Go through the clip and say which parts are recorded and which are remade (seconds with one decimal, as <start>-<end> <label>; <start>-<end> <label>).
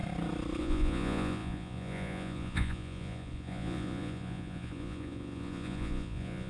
0.0-0.6 recorded; 0.6-6.5 remade